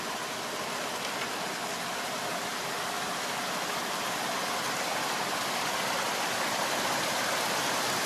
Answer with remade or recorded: recorded